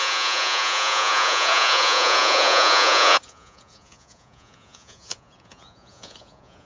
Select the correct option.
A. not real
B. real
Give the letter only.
A